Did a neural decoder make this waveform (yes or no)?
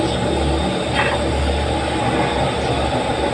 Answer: no